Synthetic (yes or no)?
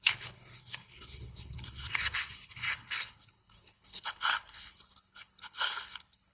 yes